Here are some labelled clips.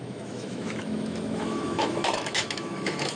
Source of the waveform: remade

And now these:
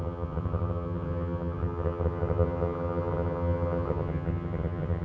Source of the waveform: remade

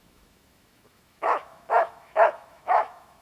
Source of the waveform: remade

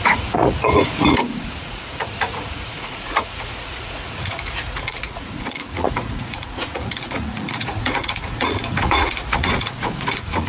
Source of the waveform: remade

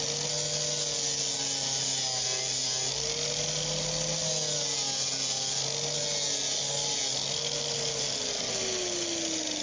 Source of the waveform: recorded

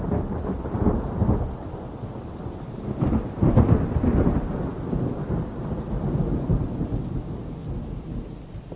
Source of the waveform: recorded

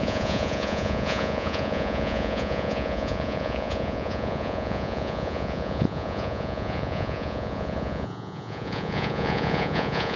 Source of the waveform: remade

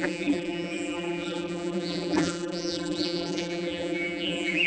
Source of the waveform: remade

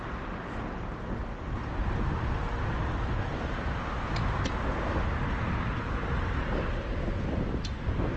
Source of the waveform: recorded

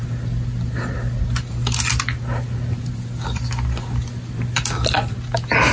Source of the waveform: recorded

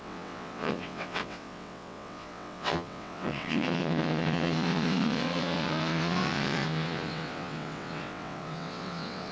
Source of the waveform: remade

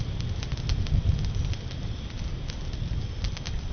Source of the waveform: recorded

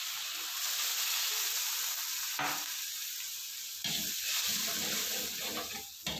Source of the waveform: recorded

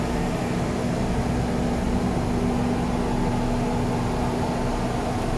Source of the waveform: recorded